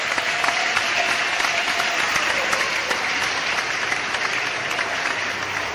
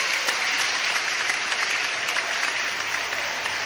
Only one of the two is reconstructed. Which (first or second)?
second